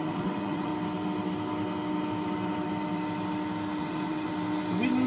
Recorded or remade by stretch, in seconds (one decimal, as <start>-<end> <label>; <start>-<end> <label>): 0.0-0.7 remade; 0.7-3.8 recorded; 3.8-4.3 remade; 4.3-5.1 recorded